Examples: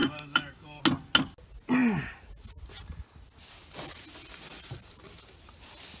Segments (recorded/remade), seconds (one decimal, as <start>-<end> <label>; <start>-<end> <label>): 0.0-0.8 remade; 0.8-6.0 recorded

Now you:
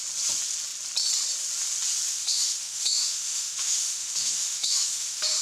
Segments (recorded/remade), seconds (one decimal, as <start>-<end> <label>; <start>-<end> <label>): 0.0-2.1 recorded; 2.1-5.4 remade

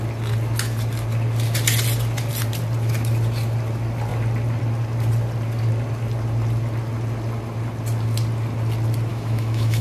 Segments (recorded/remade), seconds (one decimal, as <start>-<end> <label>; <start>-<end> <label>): 0.0-9.1 recorded; 9.1-9.8 remade

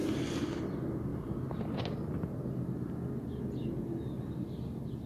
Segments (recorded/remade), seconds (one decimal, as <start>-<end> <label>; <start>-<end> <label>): 0.0-5.1 recorded

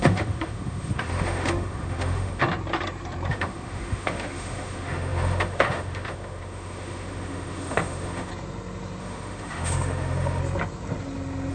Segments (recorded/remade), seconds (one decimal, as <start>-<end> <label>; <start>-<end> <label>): 0.0-2.4 remade; 2.4-3.3 recorded; 3.3-8.3 remade; 8.3-9.0 recorded; 9.0-10.4 remade; 10.4-11.5 recorded

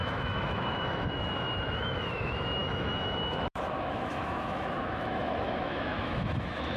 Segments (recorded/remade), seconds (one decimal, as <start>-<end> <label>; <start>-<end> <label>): 0.0-6.8 remade

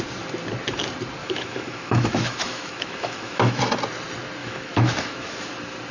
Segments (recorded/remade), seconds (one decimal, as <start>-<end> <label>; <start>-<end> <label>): 0.0-1.2 recorded; 1.2-3.6 remade; 3.6-4.4 recorded; 4.4-5.3 remade; 5.3-5.9 recorded